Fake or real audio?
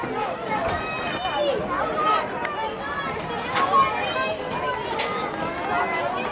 real